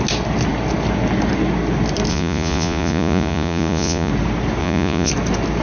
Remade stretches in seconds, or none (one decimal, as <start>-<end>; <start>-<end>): 2.1-4.1; 4.6-5.1

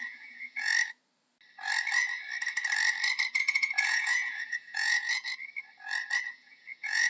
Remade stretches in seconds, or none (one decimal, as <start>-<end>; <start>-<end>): 0.0-0.7; 3.4-5.3; 6.2-7.1

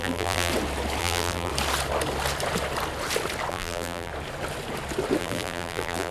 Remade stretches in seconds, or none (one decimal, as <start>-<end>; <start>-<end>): 0.0-0.5; 1.0-1.5; 3.5-4.1; 5.2-6.1